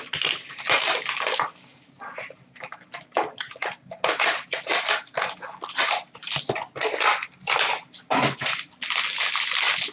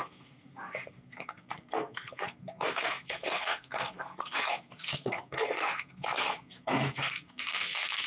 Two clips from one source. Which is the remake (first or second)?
second